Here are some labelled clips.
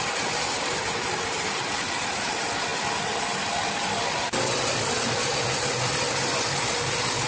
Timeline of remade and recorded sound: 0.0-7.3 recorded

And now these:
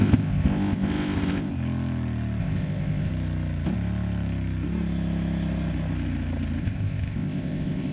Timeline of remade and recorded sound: 0.0-1.5 remade; 1.5-2.4 recorded; 2.4-3.1 remade; 3.1-6.6 recorded; 6.6-7.9 remade

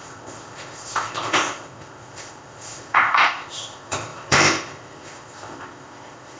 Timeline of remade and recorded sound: 0.0-6.4 remade

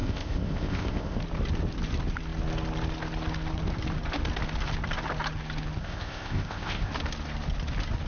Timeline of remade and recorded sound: 0.0-1.2 remade; 1.2-5.8 recorded; 5.8-6.9 remade; 6.9-8.1 recorded

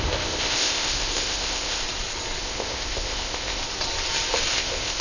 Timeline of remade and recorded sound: 0.0-1.8 remade; 1.8-2.4 recorded; 2.4-3.6 remade; 3.6-4.5 recorded; 4.5-5.0 remade

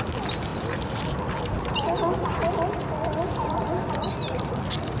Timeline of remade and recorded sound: 0.0-5.0 recorded

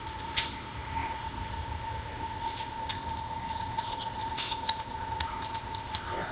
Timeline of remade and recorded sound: 0.0-6.3 remade

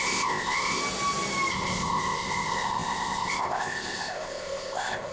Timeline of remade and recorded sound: 0.0-0.8 remade; 0.8-1.5 recorded; 1.5-5.1 remade